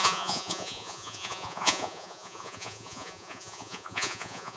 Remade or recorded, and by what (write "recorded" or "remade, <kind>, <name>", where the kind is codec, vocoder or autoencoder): remade, vocoder, Vocos